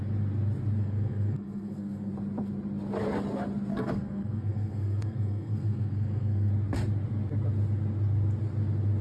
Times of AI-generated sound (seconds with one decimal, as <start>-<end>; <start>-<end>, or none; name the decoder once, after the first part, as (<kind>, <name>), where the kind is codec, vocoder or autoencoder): 0.8-2.1 (codec, SNAC); 3.7-6.5

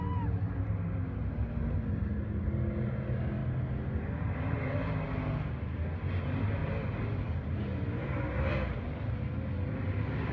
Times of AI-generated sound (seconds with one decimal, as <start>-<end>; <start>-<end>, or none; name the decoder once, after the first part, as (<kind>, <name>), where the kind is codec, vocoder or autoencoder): none

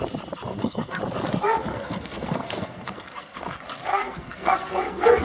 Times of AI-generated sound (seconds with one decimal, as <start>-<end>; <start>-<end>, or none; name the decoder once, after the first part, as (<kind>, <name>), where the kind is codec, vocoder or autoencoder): 0.5-1.0 (codec, SNAC); 1.7-3.5; 3.9-5.2